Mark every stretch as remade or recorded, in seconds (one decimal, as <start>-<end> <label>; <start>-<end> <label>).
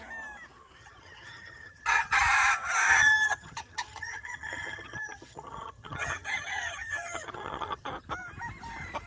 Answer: 0.0-0.8 recorded; 0.8-2.2 remade; 2.2-2.9 recorded; 2.9-7.9 remade; 7.9-9.1 recorded